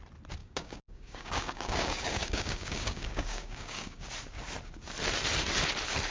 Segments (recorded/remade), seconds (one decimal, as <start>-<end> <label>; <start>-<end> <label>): 0.0-0.4 recorded; 0.4-4.1 remade; 4.1-6.1 recorded